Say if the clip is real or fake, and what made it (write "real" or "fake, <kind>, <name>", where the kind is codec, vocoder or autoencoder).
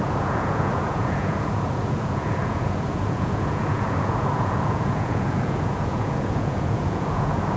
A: fake, vocoder, Vocos